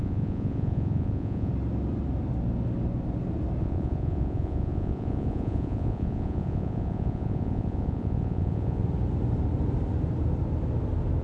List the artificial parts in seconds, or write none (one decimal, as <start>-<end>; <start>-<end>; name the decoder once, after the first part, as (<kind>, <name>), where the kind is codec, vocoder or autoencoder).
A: 0.0-1.5 (vocoder, Vocos); 3.6-8.8